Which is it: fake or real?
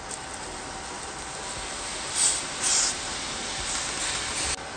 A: real